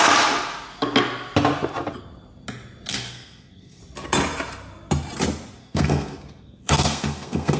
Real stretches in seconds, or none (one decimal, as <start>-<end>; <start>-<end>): 0.0-2.9; 3.8-5.6